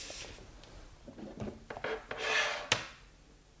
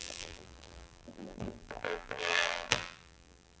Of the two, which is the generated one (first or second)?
second